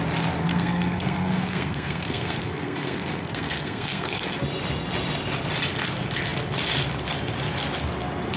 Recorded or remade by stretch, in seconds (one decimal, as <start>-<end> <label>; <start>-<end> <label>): 0.0-0.4 recorded; 0.4-4.4 remade; 4.4-8.4 recorded